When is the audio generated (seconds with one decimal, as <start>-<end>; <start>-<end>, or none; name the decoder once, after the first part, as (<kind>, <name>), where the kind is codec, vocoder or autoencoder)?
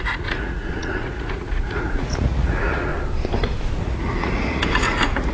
0.0-2.9 (vocoder, Vocos); 3.8-5.3